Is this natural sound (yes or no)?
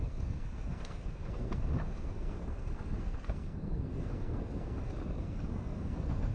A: no